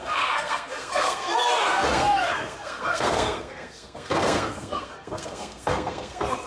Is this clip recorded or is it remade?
remade